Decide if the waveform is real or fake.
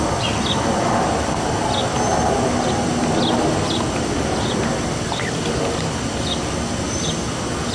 real